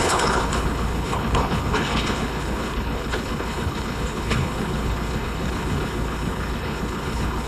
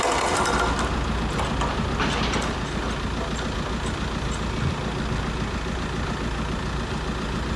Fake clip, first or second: first